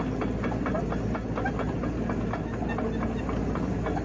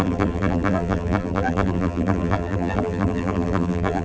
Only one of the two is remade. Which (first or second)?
second